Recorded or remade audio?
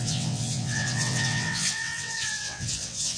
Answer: remade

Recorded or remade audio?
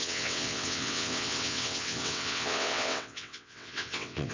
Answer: remade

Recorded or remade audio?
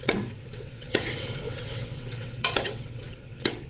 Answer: remade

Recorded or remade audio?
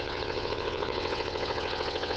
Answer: remade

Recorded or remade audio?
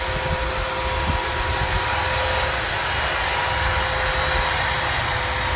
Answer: recorded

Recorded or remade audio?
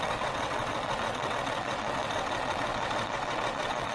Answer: remade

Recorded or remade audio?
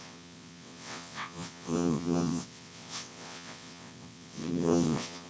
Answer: remade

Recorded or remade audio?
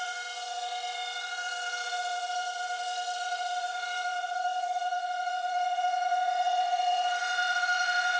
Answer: remade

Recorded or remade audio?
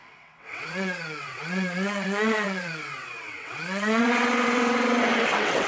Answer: remade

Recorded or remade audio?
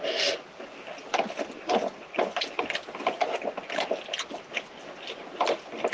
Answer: recorded